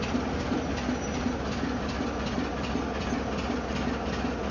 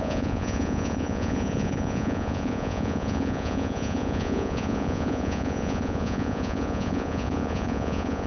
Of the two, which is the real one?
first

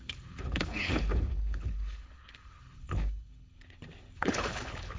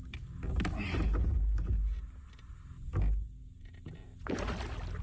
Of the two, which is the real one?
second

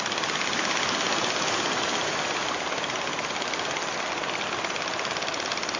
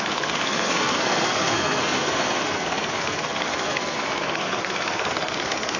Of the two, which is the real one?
first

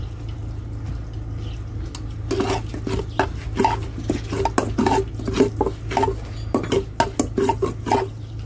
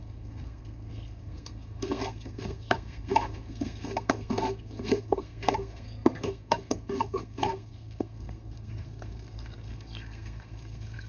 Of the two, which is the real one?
first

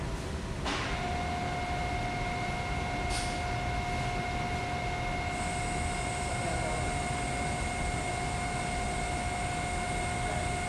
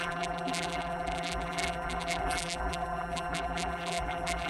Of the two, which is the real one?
first